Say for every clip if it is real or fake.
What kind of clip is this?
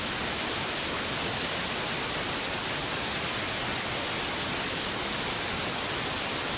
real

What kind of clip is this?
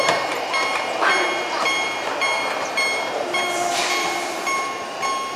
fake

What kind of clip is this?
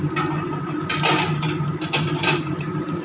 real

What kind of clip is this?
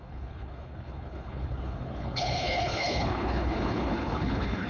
fake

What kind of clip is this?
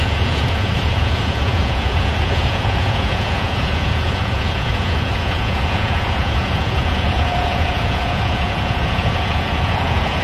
fake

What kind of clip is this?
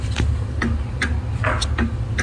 real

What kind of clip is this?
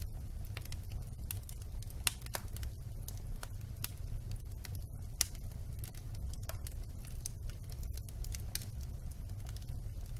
real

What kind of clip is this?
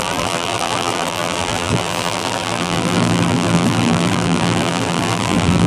fake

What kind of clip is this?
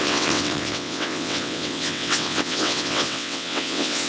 fake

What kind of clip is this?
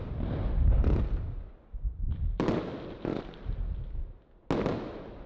real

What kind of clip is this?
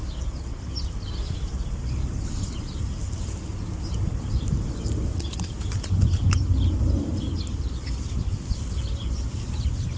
real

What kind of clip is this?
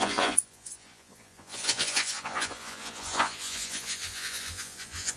fake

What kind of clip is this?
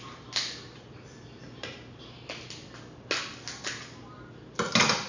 real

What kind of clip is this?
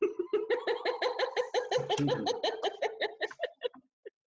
real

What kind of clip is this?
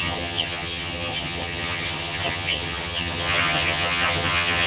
fake